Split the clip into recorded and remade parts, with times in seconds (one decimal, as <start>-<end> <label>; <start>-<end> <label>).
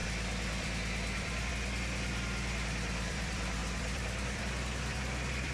0.0-5.5 remade